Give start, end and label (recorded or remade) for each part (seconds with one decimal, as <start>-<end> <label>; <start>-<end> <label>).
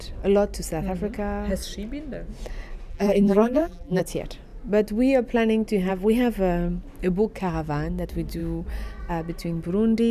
0.0-2.9 recorded; 2.9-4.0 remade; 4.0-10.1 recorded